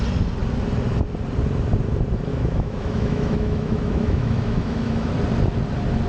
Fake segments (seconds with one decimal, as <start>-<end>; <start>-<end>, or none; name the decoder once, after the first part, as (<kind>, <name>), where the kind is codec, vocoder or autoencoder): 2.3-5.1 (autoencoder, DAC-VAE)